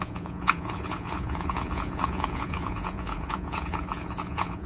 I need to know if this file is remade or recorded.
remade